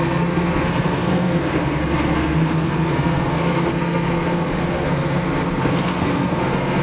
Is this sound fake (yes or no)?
yes